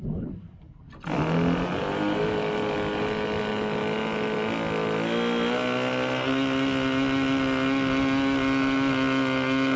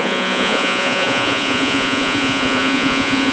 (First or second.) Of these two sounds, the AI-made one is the second